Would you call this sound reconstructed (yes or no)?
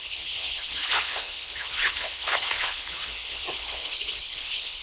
yes